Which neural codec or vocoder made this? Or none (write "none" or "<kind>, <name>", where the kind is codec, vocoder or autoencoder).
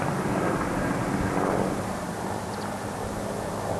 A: none